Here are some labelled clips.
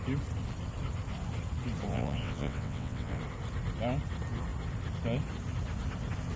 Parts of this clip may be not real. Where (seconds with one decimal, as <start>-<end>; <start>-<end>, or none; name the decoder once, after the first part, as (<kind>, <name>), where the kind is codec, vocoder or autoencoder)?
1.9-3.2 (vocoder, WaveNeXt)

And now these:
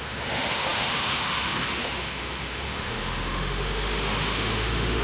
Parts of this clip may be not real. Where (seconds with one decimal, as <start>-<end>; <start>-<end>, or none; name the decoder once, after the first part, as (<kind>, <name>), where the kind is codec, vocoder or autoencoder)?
0.0-5.0 (autoencoder, DAC-VAE)

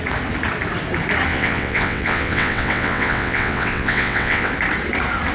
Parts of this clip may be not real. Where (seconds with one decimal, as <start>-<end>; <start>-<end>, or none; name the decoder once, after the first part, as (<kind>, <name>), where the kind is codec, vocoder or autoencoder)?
1.3-4.5 (vocoder, WaveNeXt)

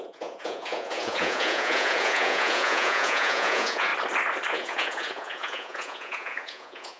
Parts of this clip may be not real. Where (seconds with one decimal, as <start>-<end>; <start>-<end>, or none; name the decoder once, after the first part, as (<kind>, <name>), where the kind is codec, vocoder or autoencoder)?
0.0-3.9 (vocoder, Vocos); 4.5-7.0

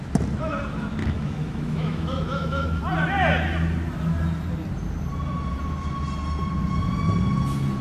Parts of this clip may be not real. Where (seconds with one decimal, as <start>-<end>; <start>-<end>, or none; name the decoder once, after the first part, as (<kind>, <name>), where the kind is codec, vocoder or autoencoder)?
1.0-2.8 (autoencoder, DAC-VAE)